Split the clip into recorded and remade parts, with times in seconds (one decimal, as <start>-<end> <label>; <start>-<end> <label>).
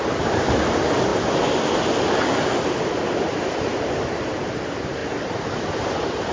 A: 0.0-6.3 recorded